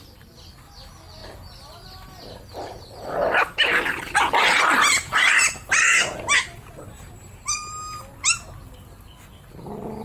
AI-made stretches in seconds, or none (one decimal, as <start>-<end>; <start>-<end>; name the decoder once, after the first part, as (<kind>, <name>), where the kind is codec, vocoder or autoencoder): none